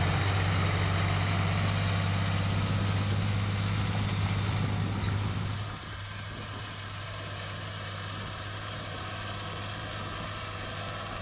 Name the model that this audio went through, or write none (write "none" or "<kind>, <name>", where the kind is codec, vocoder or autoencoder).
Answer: none